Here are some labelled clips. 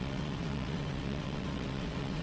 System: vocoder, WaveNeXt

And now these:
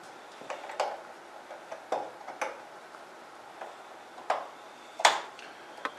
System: none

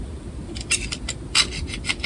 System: none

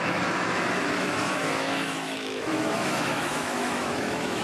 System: autoencoder, DAC-VAE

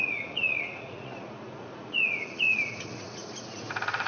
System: vocoder, Vocos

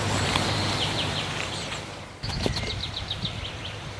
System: vocoder, BigVGAN v2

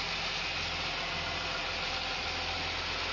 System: none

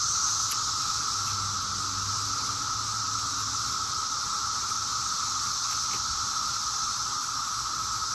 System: none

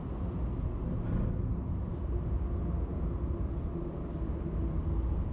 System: none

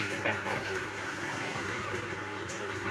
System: codec, SNAC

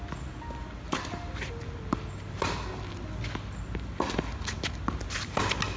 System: none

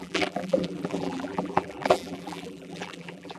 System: vocoder, BigVGAN v2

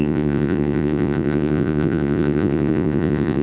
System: vocoder, Vocos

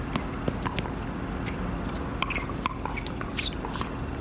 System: none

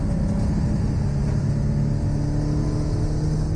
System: none